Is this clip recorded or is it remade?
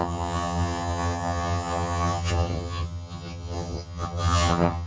remade